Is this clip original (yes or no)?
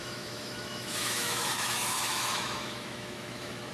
no